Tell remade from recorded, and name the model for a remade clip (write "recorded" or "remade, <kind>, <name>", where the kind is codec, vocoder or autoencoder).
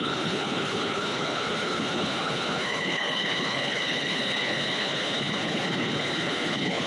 remade, codec, HILCodec